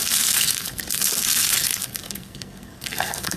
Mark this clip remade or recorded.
remade